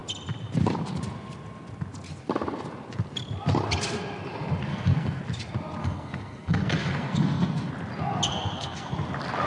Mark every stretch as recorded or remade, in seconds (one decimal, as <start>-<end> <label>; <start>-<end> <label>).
0.0-4.7 recorded; 4.7-5.2 remade; 5.2-5.8 recorded; 5.8-7.7 remade; 7.7-8.3 recorded; 8.3-8.9 remade; 8.9-9.5 recorded